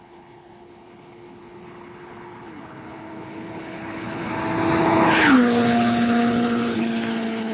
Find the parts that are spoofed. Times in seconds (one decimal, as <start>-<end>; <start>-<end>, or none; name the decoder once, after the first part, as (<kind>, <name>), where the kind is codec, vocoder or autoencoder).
0.0-4.3 (codec, HILCodec); 4.8-7.5